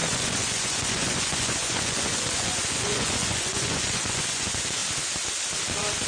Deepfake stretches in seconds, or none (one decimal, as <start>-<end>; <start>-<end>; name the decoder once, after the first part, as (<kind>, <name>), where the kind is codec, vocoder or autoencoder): 0.0-4.8 (vocoder, Vocos)